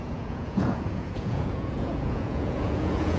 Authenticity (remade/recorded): remade